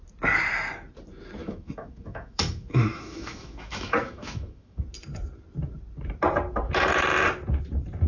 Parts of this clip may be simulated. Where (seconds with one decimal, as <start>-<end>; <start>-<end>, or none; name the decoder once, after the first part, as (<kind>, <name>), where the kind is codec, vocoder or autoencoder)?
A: 1.4-4.8 (autoencoder, DAC-VAE)